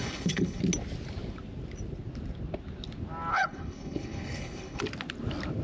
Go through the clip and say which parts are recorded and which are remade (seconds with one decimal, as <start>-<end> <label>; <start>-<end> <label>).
0.0-0.6 remade; 0.6-3.3 recorded; 3.3-4.8 remade; 4.8-5.6 recorded